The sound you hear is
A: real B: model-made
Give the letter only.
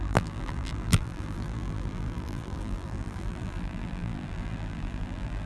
B